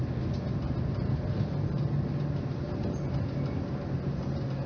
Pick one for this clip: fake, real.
real